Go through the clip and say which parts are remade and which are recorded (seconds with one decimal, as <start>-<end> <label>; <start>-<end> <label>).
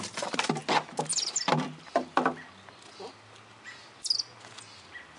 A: 0.0-5.2 recorded